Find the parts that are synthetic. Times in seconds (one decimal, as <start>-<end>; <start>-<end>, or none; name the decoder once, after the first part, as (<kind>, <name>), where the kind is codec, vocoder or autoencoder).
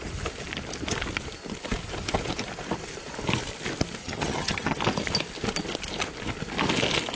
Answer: 4.0-4.8 (vocoder, HiFi-GAN)